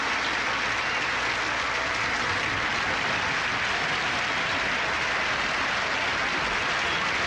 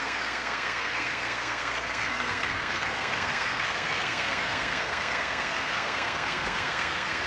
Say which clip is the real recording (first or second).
first